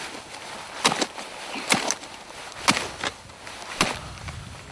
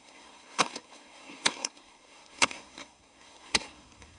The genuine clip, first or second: first